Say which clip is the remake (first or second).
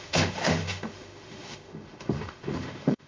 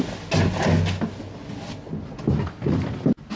first